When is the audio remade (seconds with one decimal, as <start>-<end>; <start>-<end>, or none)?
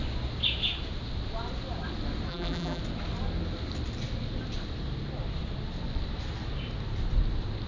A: 2.3-2.8